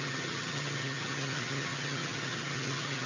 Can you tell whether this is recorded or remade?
remade